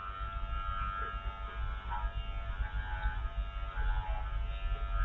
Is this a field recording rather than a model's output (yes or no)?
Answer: yes